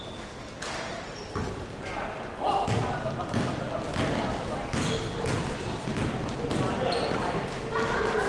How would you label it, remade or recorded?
recorded